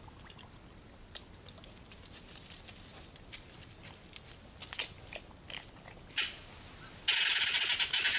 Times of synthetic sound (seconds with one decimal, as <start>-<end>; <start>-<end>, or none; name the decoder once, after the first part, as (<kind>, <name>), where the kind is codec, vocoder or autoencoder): none